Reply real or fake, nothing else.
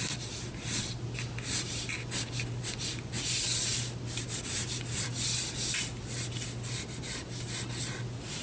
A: real